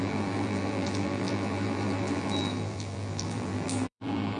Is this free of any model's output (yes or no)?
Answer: no